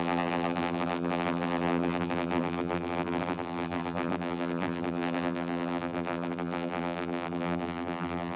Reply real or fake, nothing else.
fake